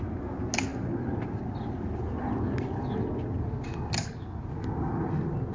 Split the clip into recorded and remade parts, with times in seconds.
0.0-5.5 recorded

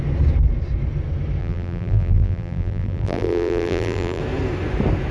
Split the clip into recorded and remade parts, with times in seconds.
0.0-1.4 recorded; 1.4-4.2 remade; 4.2-5.1 recorded